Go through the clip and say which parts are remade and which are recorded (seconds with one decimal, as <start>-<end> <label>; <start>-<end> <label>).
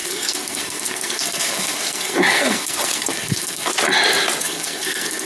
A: 0.0-3.7 remade; 3.7-4.4 recorded; 4.4-5.2 remade